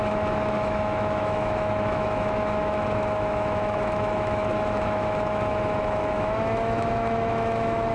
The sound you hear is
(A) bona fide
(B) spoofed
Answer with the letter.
B